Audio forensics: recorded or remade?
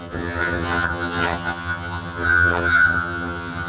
remade